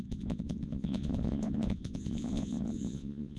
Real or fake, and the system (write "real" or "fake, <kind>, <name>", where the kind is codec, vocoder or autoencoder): fake, vocoder, Vocos